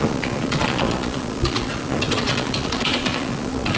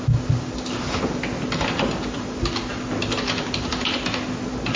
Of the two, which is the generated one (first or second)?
first